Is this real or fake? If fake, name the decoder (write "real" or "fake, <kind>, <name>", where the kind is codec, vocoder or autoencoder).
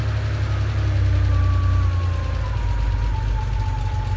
real